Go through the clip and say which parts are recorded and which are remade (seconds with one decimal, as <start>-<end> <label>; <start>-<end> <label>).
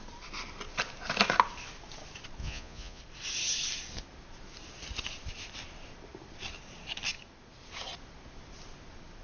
0.0-2.4 recorded; 2.4-3.0 remade; 3.0-9.2 recorded